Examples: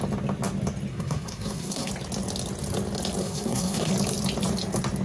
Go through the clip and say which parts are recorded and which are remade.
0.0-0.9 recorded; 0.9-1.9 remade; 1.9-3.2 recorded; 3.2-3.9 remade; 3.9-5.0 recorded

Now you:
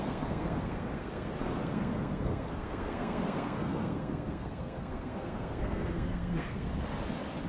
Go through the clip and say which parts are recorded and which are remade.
0.0-6.7 remade; 6.7-7.5 recorded

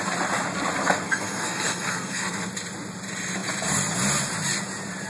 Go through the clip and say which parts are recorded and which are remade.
0.0-0.8 recorded; 0.8-2.5 remade; 2.5-5.1 recorded

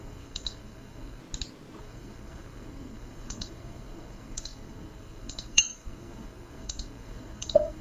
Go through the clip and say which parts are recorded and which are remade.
0.0-1.2 remade; 1.2-1.8 recorded; 1.8-7.8 remade

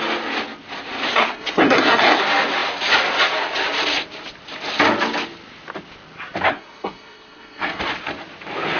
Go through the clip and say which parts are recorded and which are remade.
0.0-1.1 recorded; 1.1-2.2 remade; 2.2-6.5 recorded; 6.5-7.8 remade; 7.8-8.8 recorded

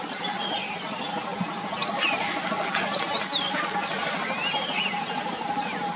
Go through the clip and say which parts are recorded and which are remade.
0.0-6.0 recorded